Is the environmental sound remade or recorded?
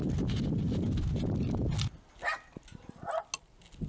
recorded